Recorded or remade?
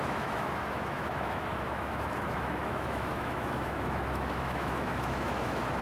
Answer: remade